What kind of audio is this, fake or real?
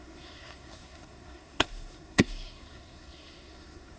fake